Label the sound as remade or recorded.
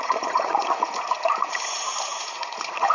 remade